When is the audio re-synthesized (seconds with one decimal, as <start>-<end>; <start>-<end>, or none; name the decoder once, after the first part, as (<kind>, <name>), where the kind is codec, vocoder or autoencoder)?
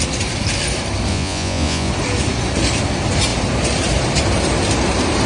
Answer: 1.1-1.9 (vocoder, Vocos)